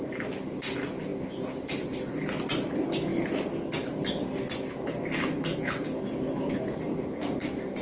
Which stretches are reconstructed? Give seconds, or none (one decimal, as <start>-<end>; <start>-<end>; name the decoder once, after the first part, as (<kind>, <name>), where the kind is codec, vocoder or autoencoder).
none